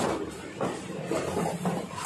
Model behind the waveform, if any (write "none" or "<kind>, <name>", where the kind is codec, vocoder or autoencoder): none